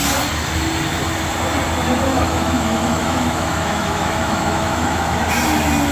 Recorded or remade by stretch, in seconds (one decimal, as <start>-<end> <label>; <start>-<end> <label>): 0.0-2.1 recorded; 2.1-5.2 remade; 5.2-5.9 recorded

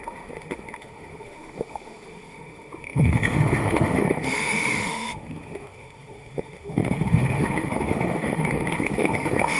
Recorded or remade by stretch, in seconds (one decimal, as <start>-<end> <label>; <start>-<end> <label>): 0.0-9.6 remade

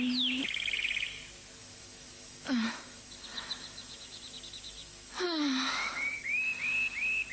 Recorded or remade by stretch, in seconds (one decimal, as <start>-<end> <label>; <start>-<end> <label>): 0.0-1.6 recorded; 1.6-5.1 remade; 5.1-5.8 recorded; 5.8-6.6 remade; 6.6-7.3 recorded

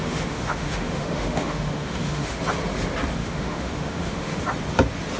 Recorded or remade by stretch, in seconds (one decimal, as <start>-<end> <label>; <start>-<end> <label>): 0.0-2.4 remade; 2.4-3.2 recorded; 3.2-4.4 remade; 4.4-5.2 recorded

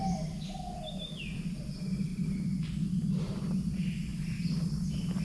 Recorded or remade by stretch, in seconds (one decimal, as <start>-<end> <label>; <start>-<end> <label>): 0.0-5.2 recorded

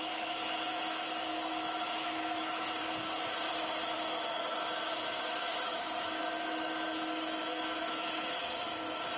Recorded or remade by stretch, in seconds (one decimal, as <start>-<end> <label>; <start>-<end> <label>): 0.0-2.8 remade; 2.8-3.5 recorded; 3.5-9.2 remade

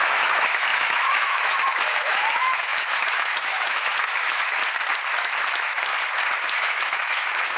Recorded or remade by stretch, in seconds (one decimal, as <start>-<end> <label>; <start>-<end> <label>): 0.0-4.6 remade; 4.6-5.2 recorded; 5.2-5.9 remade; 5.9-6.4 recorded; 6.4-7.6 remade